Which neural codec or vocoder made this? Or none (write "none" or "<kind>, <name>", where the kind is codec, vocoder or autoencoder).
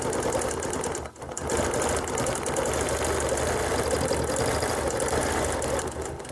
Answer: none